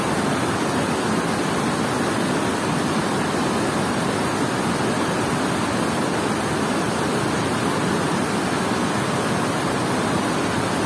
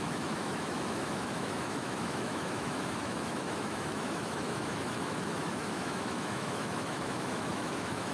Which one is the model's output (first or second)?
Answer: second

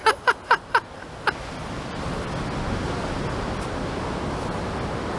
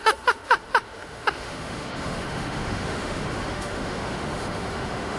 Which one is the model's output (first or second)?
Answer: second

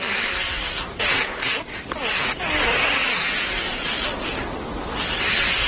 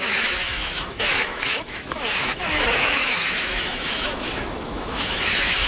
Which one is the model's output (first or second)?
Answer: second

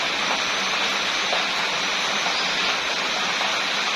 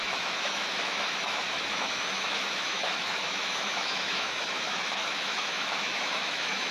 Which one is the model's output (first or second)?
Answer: second